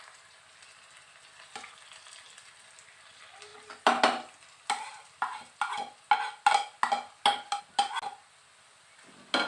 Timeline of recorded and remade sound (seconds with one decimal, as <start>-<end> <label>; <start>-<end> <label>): 0.0-9.5 recorded